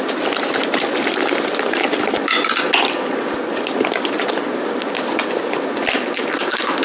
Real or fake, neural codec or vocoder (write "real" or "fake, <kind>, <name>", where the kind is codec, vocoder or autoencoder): real